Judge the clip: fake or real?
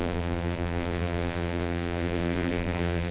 fake